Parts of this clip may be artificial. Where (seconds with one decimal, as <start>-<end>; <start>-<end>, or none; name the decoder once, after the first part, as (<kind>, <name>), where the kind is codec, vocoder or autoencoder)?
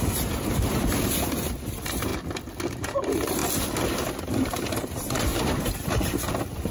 0.0-2.1 (vocoder, BigVGAN v2); 2.7-3.4; 4.2-6.7